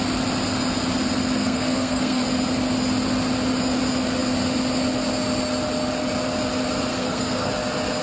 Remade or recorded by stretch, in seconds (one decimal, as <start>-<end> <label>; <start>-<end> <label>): 0.0-1.4 recorded; 1.4-2.2 remade; 2.2-6.9 recorded; 6.9-7.5 remade; 7.5-8.0 recorded